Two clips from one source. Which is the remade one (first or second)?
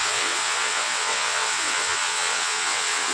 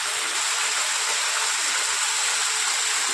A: first